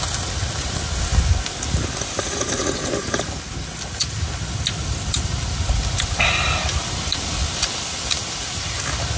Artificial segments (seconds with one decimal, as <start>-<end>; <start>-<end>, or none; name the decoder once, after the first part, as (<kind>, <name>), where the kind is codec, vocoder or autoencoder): none